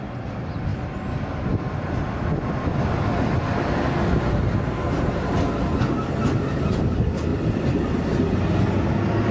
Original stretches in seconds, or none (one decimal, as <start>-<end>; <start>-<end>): 0.0-9.3